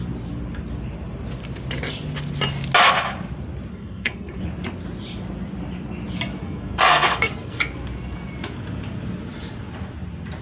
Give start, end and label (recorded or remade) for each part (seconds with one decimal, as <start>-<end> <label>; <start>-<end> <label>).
0.0-3.7 recorded; 3.7-4.4 remade; 4.4-6.4 recorded; 6.4-7.6 remade; 7.6-10.4 recorded